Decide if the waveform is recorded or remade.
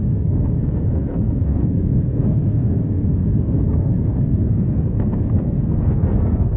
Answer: remade